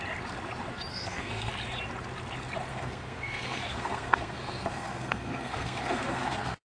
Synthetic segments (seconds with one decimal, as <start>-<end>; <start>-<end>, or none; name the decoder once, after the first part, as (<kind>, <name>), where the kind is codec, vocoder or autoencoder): 0.9-1.5 (codec, SNAC); 2.7-6.7